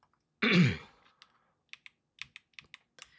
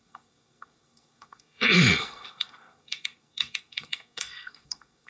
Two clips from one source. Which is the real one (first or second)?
first